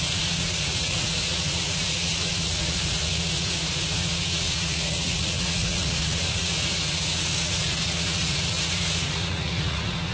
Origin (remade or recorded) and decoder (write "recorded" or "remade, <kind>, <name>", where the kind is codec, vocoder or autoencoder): remade, vocoder, Vocos